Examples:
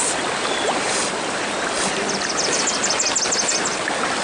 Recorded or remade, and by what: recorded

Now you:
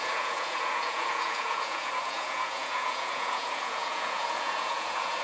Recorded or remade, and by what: remade, vocoder, Vocos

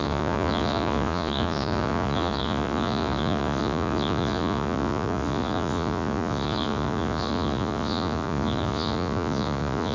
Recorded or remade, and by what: remade, vocoder, Vocos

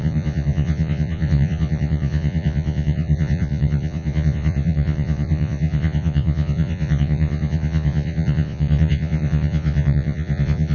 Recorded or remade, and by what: remade, vocoder, Vocos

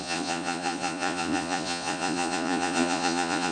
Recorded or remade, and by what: remade, vocoder, Vocos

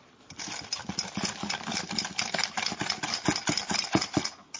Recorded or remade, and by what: recorded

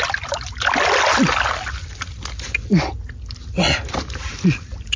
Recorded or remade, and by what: recorded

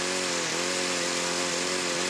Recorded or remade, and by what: recorded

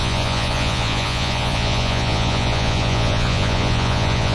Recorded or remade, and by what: remade, vocoder, Vocos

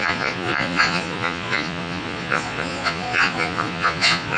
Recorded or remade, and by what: remade, vocoder, Vocos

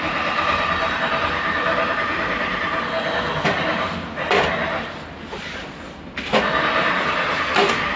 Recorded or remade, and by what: recorded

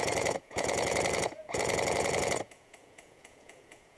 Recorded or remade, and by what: remade, vocoder, Vocos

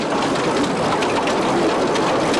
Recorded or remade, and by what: recorded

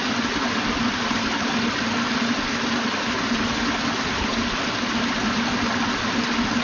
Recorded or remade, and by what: recorded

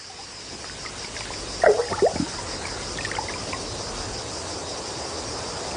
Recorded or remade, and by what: recorded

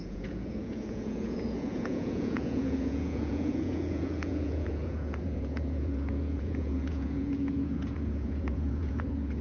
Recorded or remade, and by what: remade, vocoder, Vocos